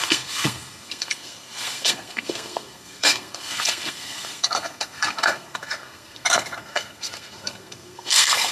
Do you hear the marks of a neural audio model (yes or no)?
yes